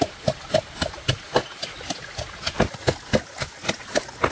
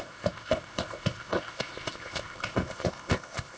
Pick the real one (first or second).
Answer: first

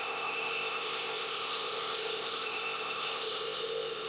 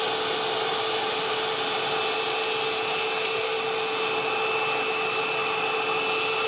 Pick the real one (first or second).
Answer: second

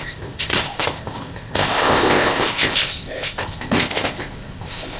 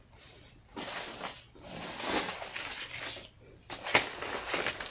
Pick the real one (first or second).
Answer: second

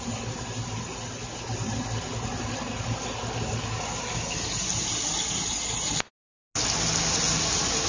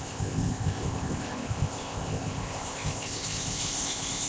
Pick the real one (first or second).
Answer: first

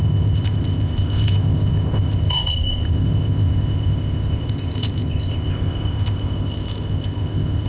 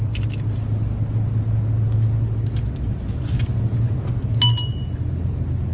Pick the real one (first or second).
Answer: second